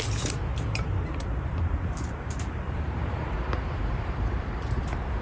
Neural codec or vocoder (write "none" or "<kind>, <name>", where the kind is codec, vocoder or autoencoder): vocoder, BigVGAN v2